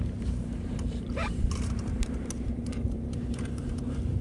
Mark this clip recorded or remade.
remade